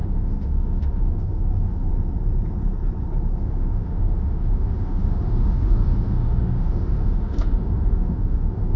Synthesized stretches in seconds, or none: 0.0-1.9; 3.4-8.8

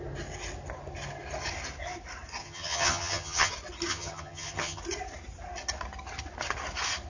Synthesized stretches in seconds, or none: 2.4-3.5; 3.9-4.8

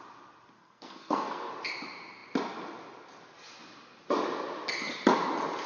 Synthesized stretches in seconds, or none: 0.6-1.5